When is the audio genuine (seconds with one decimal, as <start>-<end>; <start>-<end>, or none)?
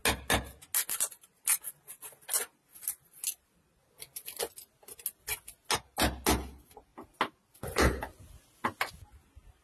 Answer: 0.0-9.6